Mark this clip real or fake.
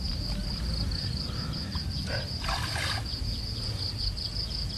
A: real